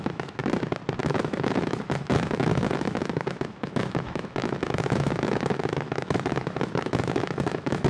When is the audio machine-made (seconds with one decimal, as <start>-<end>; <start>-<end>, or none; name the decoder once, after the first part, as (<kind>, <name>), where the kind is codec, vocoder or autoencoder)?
0.0-0.4 (autoencoder, DAC-VAE); 1.0-7.9